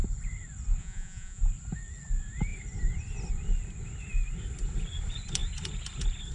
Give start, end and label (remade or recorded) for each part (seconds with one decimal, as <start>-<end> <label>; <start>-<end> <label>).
0.0-0.8 recorded; 0.8-1.4 remade; 1.4-6.3 recorded